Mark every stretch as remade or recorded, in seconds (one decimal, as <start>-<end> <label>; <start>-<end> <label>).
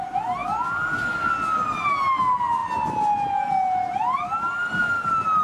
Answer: 0.0-5.4 recorded